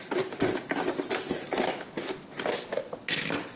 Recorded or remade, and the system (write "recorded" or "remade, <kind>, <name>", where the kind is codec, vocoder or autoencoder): recorded